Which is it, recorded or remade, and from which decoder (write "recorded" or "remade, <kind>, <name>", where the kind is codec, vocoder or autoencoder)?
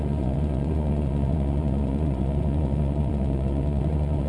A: remade, vocoder, Vocos